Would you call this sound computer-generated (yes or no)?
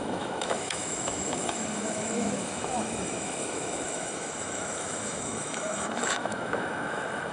yes